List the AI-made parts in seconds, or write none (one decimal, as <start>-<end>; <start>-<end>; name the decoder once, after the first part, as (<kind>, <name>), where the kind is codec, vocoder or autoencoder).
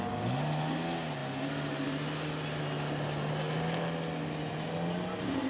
none